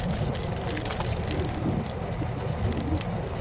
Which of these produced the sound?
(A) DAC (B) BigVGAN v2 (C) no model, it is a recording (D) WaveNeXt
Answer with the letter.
C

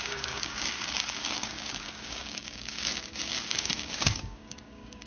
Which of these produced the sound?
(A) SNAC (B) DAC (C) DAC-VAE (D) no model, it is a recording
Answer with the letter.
B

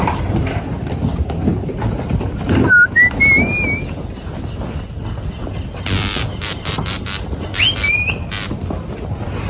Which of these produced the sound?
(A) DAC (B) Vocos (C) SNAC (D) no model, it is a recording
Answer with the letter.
D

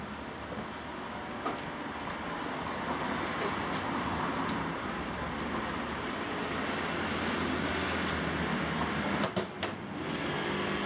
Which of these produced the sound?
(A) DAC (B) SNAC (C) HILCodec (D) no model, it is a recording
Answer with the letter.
D